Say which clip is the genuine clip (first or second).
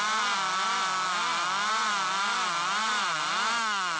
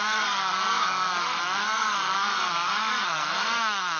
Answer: first